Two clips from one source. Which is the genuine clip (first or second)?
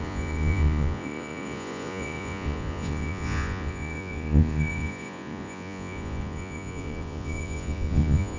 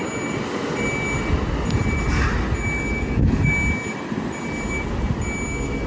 second